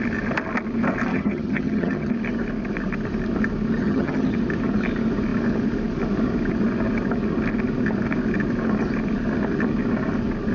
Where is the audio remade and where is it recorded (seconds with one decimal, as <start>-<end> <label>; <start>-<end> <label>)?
0.0-1.1 recorded; 1.1-2.1 remade; 2.1-3.8 recorded; 3.8-4.3 remade; 4.3-10.5 recorded